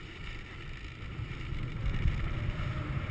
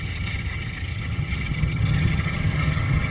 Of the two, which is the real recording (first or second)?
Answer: first